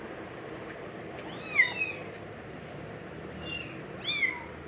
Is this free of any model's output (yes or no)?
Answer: yes